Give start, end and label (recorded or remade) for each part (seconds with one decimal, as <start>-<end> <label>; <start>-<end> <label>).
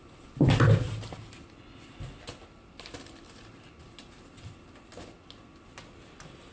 0.0-6.5 recorded